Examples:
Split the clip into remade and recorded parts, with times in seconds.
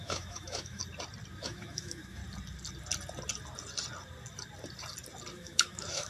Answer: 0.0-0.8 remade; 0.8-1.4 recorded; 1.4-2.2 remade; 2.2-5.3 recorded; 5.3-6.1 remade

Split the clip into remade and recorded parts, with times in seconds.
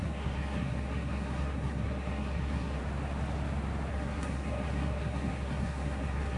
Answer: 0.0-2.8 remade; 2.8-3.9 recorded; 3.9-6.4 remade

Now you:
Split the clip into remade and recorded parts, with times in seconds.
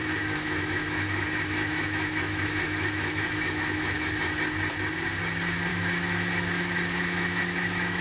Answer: 0.0-4.1 remade; 4.1-5.7 recorded; 5.7-8.0 remade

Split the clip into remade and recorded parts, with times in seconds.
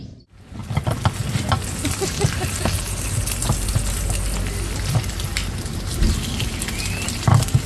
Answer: 0.0-7.7 recorded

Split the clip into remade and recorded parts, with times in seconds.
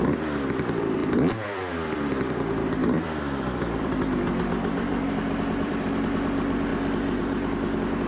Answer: 0.0-6.7 remade; 6.7-7.2 recorded; 7.2-8.1 remade